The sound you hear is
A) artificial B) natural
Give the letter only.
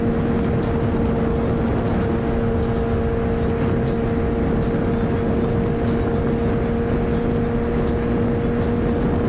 B